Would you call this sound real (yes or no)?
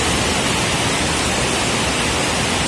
yes